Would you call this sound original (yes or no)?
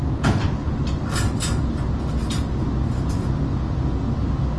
yes